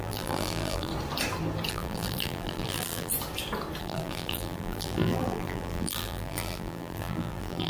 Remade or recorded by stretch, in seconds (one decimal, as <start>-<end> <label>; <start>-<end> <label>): 0.0-0.9 remade; 0.9-1.7 recorded; 1.7-3.1 remade; 3.1-3.8 recorded; 3.8-7.7 remade